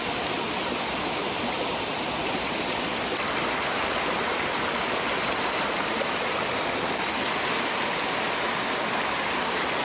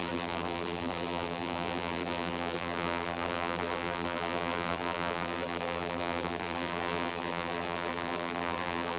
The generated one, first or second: second